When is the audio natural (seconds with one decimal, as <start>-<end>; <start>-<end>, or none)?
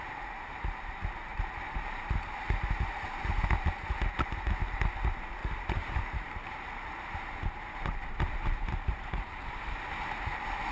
0.0-1.3; 2.1-5.4; 9.5-10.7